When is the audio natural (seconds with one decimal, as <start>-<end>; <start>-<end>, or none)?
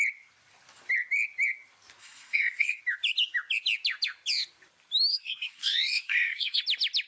0.0-2.0; 2.8-5.1; 6.6-7.1